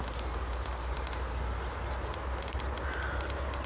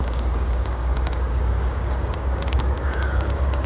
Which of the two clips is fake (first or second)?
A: second